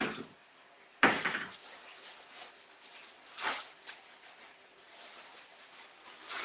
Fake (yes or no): no